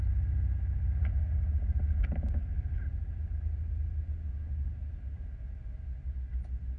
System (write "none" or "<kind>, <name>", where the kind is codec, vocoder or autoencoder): none